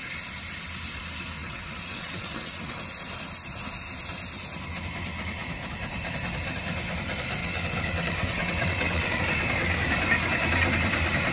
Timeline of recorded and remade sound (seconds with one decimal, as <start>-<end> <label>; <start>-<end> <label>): 0.0-1.4 recorded; 1.4-2.8 remade; 2.8-7.4 recorded; 7.4-9.2 remade; 9.2-11.3 recorded